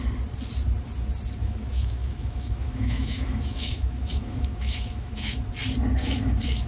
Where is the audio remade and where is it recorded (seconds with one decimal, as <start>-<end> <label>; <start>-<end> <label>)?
0.0-1.4 recorded; 1.4-5.4 remade; 5.4-6.0 recorded; 6.0-6.7 remade

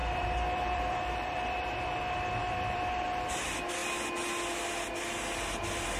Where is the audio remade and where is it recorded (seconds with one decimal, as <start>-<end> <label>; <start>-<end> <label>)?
0.0-1.8 remade; 1.8-2.4 recorded; 2.4-3.4 remade; 3.4-6.0 recorded

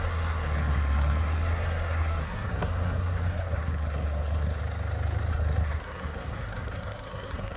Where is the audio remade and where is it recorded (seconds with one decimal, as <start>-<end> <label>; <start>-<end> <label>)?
0.0-4.6 remade; 4.6-5.3 recorded; 5.3-7.6 remade

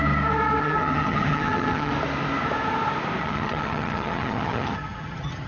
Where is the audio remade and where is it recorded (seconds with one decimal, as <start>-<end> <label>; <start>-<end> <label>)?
0.0-0.6 recorded; 0.6-1.9 remade; 1.9-3.2 recorded; 3.2-5.5 remade